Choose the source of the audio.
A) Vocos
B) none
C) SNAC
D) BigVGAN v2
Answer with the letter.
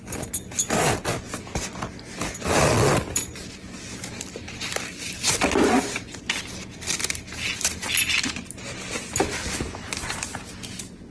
B